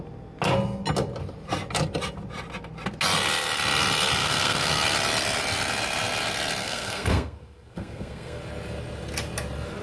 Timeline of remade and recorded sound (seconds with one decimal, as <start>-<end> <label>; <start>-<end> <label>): 0.0-4.2 recorded; 4.2-4.7 remade; 4.7-6.6 recorded; 6.6-8.4 remade; 8.4-9.8 recorded